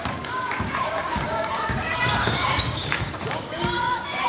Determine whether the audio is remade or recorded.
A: remade